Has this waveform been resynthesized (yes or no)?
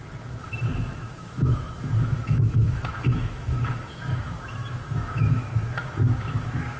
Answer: yes